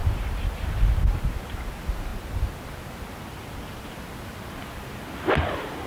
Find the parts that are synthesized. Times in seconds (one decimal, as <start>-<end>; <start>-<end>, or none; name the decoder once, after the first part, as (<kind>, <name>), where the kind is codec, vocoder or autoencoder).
none